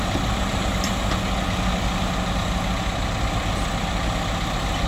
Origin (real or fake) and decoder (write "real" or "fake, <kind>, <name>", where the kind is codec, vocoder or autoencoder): real